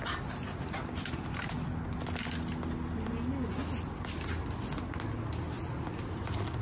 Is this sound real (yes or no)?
yes